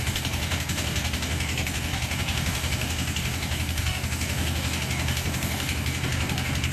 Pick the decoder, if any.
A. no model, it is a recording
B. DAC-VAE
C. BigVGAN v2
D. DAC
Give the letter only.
D